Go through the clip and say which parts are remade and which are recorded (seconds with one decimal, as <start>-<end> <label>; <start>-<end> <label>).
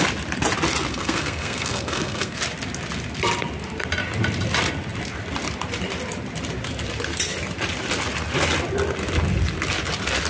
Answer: 0.0-0.9 recorded; 0.9-2.4 remade; 2.4-10.3 recorded